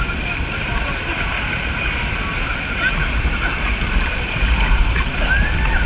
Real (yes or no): yes